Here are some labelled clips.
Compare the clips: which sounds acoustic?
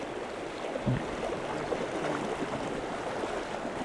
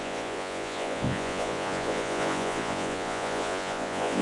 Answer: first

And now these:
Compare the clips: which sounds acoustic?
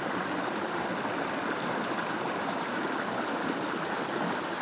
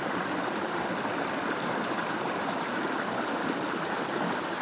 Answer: first